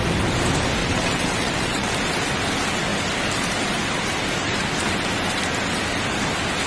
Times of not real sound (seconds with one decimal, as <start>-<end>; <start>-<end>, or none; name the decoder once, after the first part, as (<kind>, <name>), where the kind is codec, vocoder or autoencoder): 0.8-1.9 (vocoder, WaveNeXt)